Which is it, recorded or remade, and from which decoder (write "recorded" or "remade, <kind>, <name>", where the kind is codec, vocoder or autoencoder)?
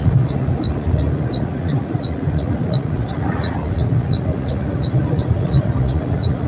remade, vocoder, Vocos